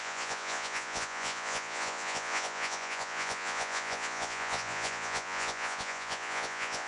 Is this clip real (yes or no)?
no